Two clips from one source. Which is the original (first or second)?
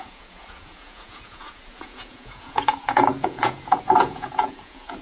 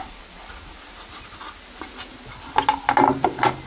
second